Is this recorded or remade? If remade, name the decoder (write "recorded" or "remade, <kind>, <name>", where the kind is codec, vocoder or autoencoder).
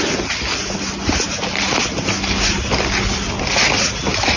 recorded